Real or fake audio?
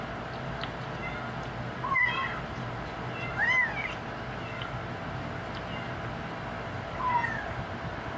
real